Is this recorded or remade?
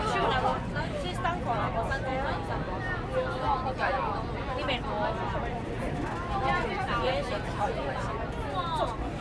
recorded